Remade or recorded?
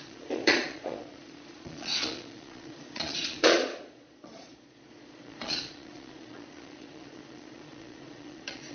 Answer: remade